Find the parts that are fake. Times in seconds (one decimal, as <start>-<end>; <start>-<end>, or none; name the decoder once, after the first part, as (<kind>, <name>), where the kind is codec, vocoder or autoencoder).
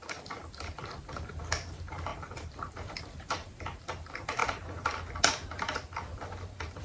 2.1-3.0 (vocoder, BigVGAN v2)